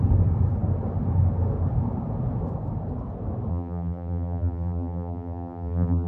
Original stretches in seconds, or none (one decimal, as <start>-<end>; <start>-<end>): 0.0-3.5